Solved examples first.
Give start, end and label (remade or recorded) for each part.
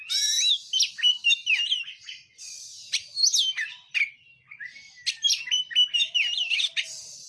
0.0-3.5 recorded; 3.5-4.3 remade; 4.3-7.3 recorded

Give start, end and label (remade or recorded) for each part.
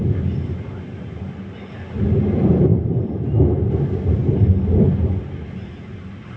0.0-6.4 recorded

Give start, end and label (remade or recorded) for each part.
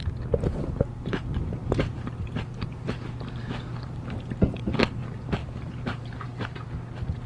0.0-1.6 recorded; 1.6-4.8 remade; 4.8-5.4 recorded; 5.4-6.7 remade; 6.7-7.3 recorded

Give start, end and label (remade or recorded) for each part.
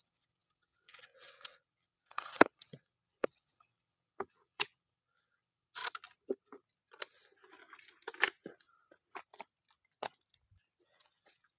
0.0-5.8 remade; 5.8-10.8 recorded; 10.8-11.6 remade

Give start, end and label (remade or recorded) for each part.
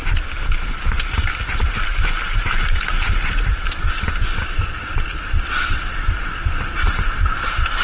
0.0-7.8 recorded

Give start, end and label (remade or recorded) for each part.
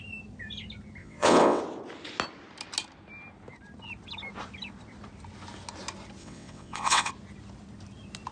0.0-1.0 recorded; 1.0-1.6 remade; 1.6-6.2 recorded; 6.2-7.1 remade; 7.1-8.3 recorded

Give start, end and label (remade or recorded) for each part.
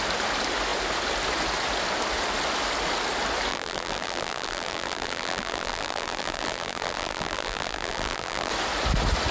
0.0-3.5 recorded; 3.5-8.5 remade; 8.5-9.3 recorded